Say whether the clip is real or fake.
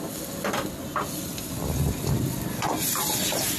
real